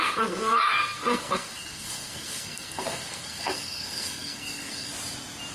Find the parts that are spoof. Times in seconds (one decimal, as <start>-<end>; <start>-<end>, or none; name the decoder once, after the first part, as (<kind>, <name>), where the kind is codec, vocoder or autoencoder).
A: 0.0-4.9 (codec, SNAC)